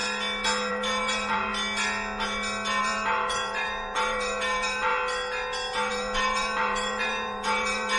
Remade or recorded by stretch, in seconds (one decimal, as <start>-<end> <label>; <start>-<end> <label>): 0.0-0.7 recorded; 0.7-1.5 remade; 1.5-2.8 recorded; 2.8-4.9 remade; 4.9-5.9 recorded; 5.9-8.0 remade